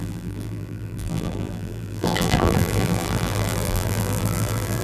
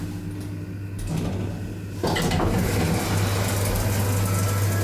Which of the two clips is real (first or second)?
second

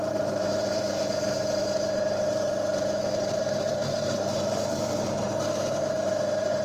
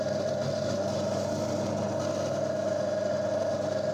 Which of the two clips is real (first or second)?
second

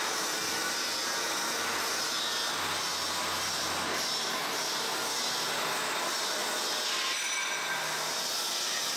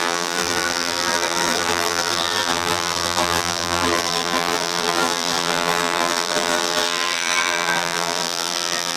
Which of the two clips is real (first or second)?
first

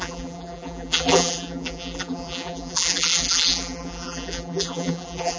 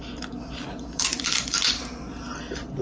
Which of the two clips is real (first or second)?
second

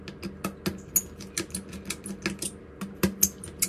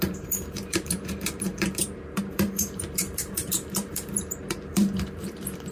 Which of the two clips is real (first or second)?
first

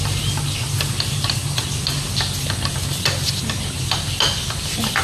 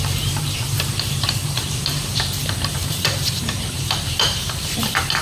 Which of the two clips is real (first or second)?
first